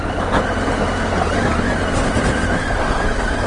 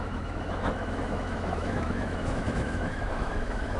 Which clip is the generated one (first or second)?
second